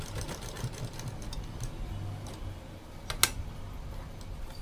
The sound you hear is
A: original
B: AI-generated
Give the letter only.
A